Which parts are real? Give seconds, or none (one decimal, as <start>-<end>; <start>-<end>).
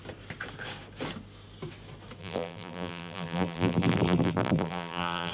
0.0-2.2